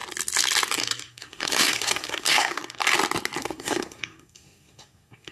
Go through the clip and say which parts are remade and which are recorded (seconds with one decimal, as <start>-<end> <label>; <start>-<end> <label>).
0.0-0.7 recorded; 0.7-2.8 remade; 2.8-3.4 recorded; 3.4-5.3 remade